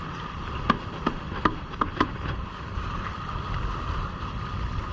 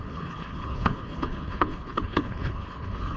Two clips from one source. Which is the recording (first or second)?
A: first